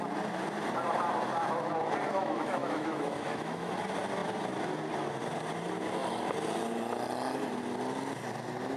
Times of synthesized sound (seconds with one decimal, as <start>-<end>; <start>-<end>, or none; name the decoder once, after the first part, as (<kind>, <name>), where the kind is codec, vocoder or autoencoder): 2.1-3.7 (autoencoder, DAC-VAE)